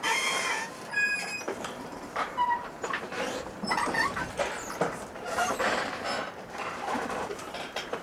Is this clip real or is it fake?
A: fake